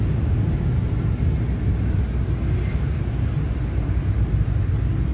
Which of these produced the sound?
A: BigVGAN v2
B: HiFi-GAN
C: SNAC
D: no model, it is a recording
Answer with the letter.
D